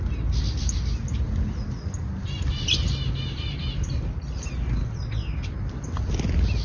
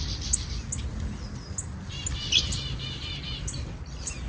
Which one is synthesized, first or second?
second